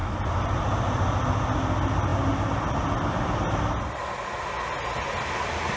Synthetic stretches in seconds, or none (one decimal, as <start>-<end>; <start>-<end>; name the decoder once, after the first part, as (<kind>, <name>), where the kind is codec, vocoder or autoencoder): none